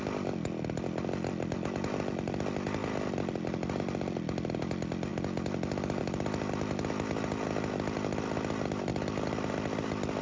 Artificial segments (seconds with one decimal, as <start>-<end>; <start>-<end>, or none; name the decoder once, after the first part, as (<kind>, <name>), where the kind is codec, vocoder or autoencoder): none